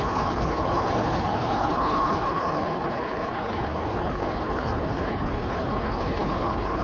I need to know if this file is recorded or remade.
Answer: remade